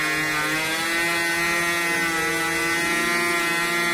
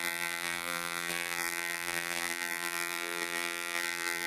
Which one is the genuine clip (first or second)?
first